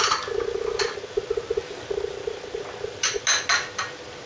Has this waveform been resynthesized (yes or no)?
no